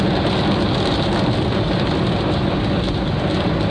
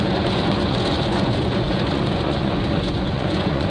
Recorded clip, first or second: first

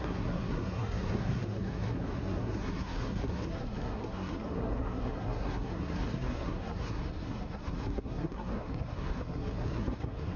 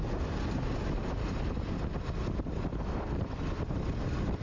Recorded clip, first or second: second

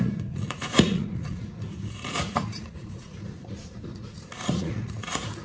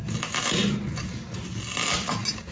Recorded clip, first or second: second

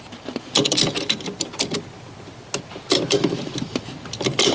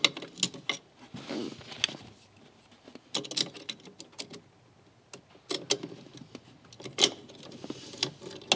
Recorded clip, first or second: second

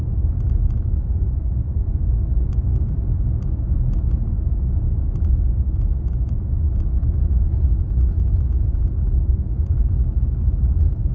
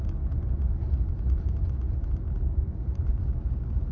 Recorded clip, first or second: second